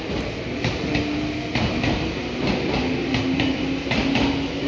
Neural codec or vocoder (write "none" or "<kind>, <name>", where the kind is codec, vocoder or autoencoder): none